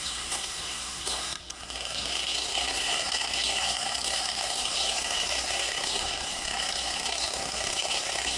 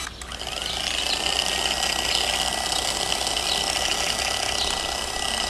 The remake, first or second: first